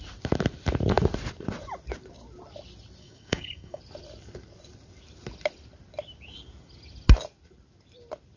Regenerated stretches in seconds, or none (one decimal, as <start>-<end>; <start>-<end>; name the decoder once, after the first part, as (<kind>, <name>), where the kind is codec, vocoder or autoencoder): 3.0-3.8 (codec, DAC)